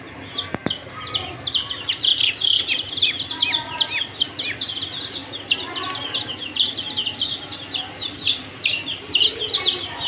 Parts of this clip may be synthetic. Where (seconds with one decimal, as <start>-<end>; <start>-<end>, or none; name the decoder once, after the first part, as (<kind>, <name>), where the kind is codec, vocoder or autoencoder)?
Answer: none